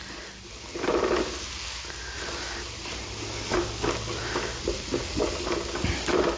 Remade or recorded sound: recorded